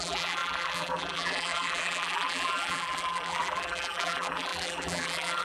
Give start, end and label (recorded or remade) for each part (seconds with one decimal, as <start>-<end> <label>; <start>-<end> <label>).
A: 0.0-5.4 remade